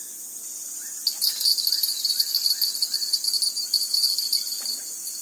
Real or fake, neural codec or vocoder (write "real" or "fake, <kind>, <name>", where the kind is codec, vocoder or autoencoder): real